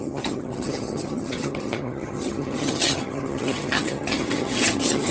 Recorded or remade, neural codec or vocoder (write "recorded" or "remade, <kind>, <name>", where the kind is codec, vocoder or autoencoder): remade, vocoder, HiFi-GAN